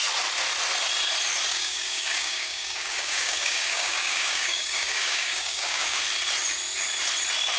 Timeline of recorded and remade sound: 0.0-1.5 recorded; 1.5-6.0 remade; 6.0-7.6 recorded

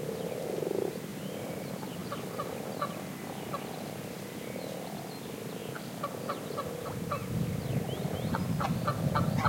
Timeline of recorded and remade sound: 0.0-1.1 recorded; 1.1-1.6 remade; 1.6-9.5 recorded

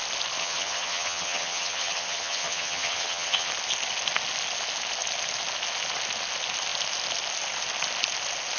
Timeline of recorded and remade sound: 0.0-0.4 recorded; 0.4-3.5 remade; 3.5-8.6 recorded

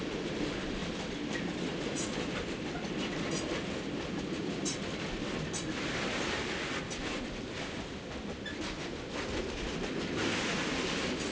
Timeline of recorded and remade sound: 0.0-11.3 recorded

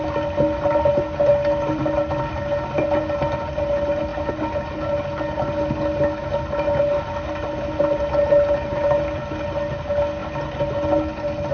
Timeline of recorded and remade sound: 0.0-11.5 recorded

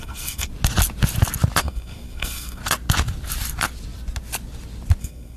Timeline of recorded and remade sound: 0.0-0.5 remade; 0.5-1.6 recorded; 1.6-2.6 remade; 2.6-5.0 recorded; 5.0-5.4 remade

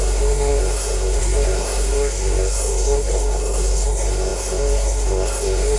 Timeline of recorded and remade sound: 0.0-5.8 remade

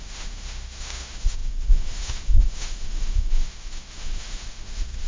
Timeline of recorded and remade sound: 0.0-5.1 remade